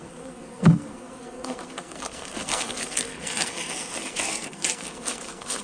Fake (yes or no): yes